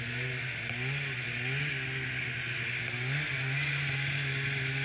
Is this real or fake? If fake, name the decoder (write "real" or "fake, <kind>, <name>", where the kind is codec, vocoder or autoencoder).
real